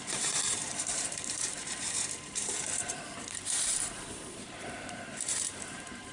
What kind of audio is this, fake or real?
fake